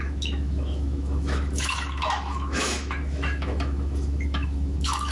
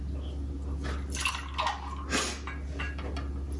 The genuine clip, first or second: second